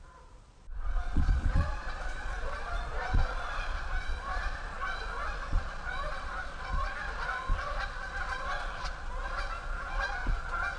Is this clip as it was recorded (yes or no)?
no